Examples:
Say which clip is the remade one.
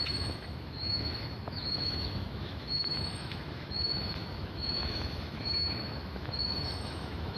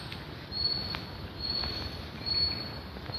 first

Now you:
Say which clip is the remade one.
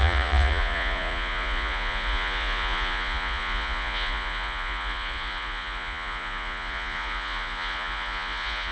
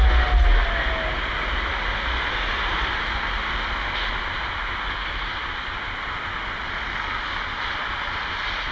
first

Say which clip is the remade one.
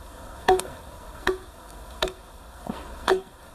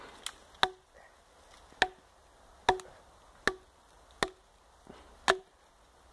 first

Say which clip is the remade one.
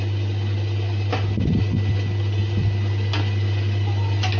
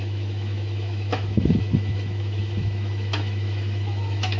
second